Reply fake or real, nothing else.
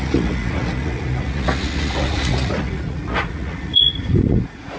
fake